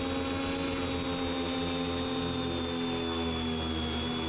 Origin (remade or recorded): recorded